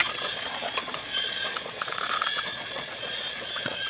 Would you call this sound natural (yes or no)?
no